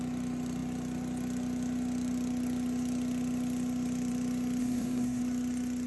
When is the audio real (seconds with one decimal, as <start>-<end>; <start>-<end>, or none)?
0.0-4.6; 5.2-5.9